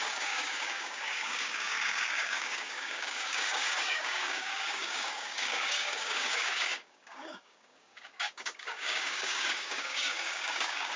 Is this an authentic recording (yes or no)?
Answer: no